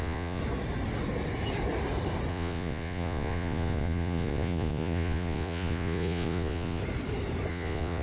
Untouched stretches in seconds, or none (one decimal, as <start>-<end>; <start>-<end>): 0.4-2.3; 6.8-7.5